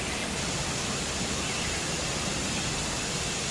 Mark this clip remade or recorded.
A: recorded